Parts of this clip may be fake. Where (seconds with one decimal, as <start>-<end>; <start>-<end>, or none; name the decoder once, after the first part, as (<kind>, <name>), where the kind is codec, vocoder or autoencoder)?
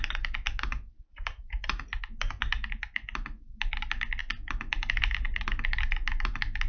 1.1-2.0 (vocoder, Vocos)